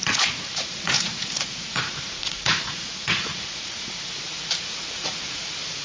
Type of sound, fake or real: fake